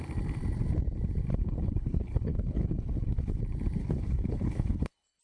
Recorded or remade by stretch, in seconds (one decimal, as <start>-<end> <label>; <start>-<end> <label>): 0.0-1.3 recorded; 1.3-3.4 remade; 3.4-3.8 recorded; 3.8-5.2 remade